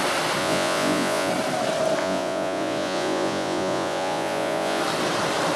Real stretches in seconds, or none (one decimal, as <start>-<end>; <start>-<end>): 0.0-0.4; 1.3-2.0; 4.8-5.6